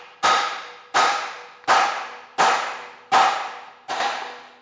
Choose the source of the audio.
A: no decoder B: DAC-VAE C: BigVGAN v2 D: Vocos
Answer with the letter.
A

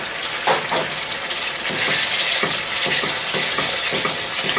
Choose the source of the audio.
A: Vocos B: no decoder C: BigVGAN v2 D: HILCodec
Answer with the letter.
B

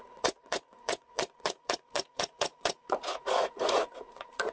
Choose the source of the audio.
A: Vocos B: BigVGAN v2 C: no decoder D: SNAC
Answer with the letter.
A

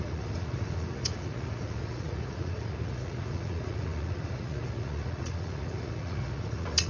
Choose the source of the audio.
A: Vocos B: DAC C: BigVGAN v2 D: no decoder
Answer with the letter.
A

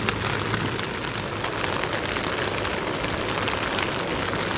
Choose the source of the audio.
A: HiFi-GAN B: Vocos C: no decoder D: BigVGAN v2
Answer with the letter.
C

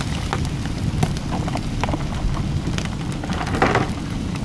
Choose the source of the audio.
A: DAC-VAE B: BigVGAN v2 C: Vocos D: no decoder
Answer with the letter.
D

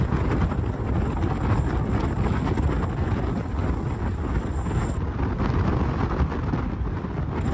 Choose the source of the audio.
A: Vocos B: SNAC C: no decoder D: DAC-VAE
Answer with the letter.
C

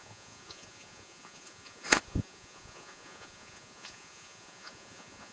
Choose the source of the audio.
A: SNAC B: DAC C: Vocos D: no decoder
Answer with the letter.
C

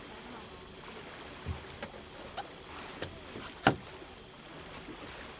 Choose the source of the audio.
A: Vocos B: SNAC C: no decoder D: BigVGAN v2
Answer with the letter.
C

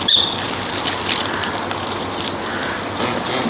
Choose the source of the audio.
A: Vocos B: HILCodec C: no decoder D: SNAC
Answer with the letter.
C